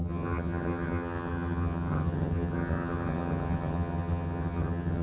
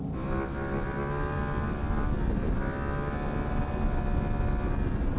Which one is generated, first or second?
first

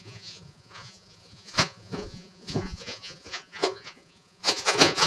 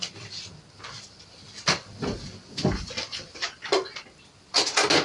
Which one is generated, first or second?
first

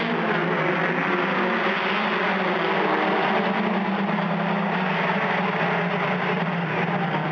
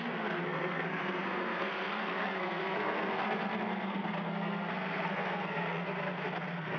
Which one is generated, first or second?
second